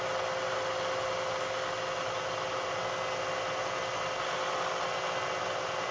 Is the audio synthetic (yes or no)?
no